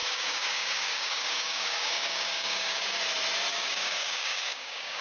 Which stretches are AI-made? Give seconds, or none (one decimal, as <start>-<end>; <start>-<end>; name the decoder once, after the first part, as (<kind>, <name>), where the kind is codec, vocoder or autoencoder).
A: 0.0-3.0 (codec, DAC); 3.5-5.0